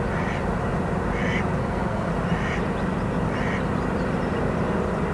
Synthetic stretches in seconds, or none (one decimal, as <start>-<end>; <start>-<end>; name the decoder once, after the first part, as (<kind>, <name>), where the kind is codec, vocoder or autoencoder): 1.6-2.1 (codec, SNAC)